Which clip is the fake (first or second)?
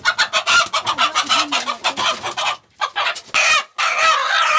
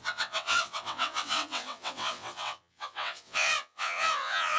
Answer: second